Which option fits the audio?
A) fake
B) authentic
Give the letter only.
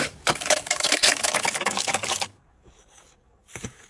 A